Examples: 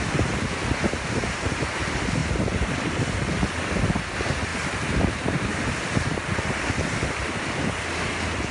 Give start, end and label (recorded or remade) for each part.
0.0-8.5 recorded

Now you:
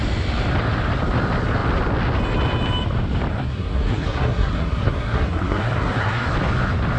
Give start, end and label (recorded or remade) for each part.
0.0-3.3 recorded; 3.3-6.3 remade; 6.3-7.0 recorded

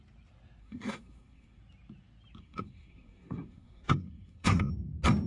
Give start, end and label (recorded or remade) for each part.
0.0-0.6 recorded; 0.6-1.6 remade; 1.6-2.4 recorded; 2.4-4.7 remade; 4.7-5.3 recorded

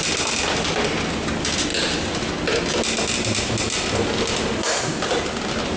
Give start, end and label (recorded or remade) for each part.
0.0-5.8 recorded

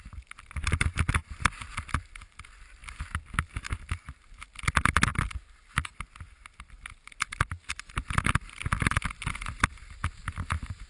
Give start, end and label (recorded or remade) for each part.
0.0-10.9 recorded

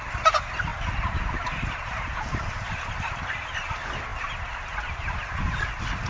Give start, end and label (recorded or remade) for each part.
0.0-6.1 recorded

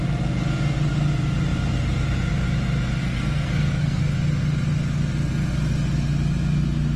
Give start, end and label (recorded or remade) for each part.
0.0-3.0 recorded; 3.0-4.0 remade; 4.0-7.0 recorded

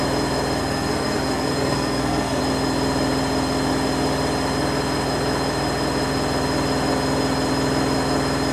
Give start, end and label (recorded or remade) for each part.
0.0-0.6 recorded; 0.6-2.4 remade; 2.4-8.5 recorded